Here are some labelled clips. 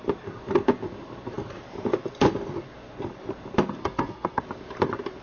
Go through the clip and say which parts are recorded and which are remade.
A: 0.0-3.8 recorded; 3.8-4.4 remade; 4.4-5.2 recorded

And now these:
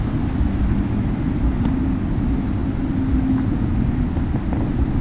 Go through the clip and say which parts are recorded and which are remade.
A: 0.0-5.0 recorded

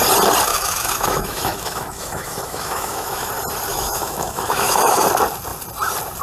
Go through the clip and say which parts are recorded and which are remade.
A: 0.0-0.5 recorded; 0.5-3.3 remade; 3.3-3.7 recorded; 3.7-5.1 remade; 5.1-6.2 recorded

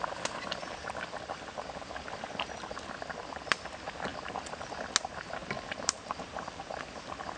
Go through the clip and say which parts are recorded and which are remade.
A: 0.0-5.4 recorded; 5.4-6.8 remade; 6.8-7.4 recorded

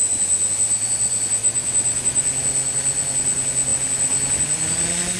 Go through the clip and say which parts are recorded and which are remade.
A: 0.0-1.4 recorded; 1.4-2.2 remade; 2.2-5.2 recorded

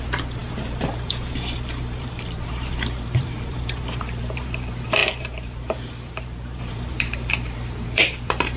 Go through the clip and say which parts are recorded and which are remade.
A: 0.0-8.6 remade